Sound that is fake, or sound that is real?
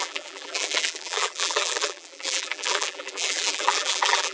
fake